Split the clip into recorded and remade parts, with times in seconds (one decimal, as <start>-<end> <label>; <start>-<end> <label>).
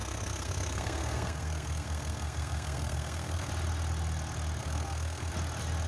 0.0-3.5 remade; 3.5-4.6 recorded; 4.6-5.3 remade; 5.3-5.9 recorded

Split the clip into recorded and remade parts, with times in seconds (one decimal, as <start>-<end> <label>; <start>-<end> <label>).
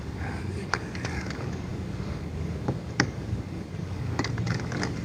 0.0-5.0 remade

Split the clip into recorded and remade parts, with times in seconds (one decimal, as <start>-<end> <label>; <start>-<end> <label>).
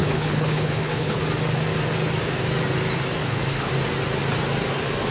0.0-1.2 remade; 1.2-3.2 recorded; 3.2-3.7 remade; 3.7-5.1 recorded